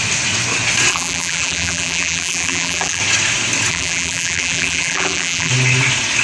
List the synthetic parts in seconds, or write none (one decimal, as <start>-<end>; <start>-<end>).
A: 0.9-3.0; 3.7-5.5